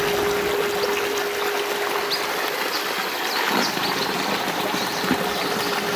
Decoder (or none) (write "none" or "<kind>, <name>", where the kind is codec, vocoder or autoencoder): none